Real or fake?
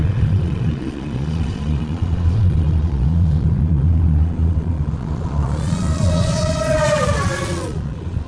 fake